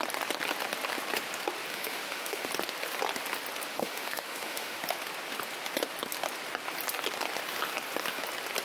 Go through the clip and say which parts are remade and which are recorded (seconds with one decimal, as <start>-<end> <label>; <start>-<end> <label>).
0.0-1.7 recorded; 1.7-2.5 remade; 2.5-3.7 recorded; 3.7-4.8 remade; 4.8-8.6 recorded